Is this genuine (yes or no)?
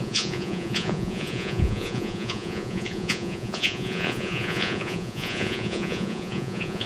no